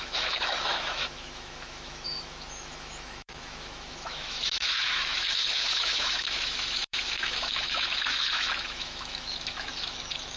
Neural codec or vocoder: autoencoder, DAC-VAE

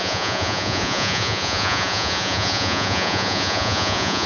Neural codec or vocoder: vocoder, Vocos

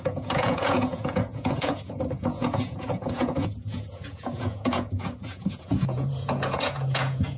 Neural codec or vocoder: vocoder, Vocos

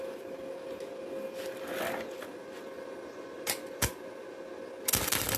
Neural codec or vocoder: none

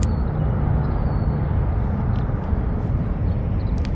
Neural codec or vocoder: none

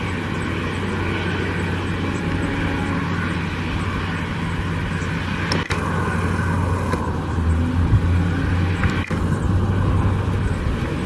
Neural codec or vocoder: none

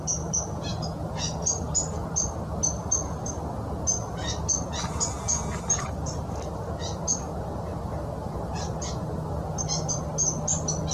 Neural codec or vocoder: none